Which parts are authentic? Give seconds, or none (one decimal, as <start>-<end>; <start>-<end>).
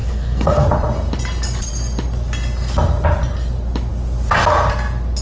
0.6-5.2